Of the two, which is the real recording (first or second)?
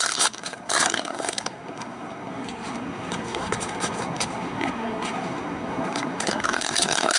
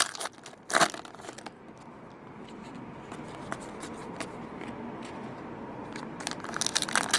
second